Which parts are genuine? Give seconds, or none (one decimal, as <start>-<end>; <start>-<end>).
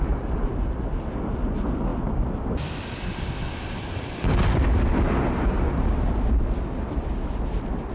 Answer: 0.0-7.9